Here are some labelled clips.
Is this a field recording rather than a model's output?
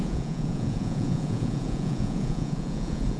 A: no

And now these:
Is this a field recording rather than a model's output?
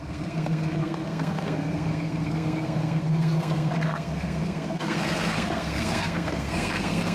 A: no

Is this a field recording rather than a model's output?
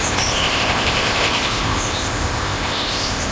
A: no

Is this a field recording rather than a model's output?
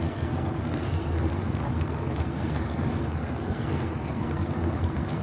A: no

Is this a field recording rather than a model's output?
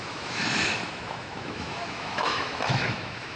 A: no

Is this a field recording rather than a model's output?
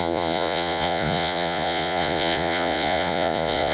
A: no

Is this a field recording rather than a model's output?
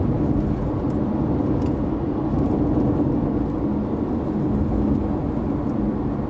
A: yes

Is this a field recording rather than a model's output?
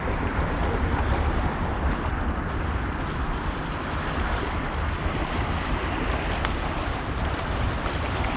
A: yes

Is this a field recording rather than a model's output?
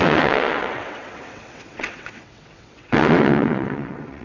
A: no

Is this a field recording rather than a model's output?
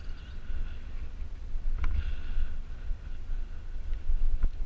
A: yes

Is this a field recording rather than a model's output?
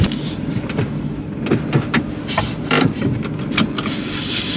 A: yes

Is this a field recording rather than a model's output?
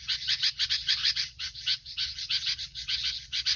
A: no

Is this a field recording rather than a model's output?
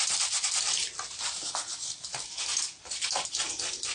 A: yes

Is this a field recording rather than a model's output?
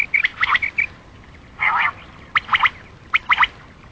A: yes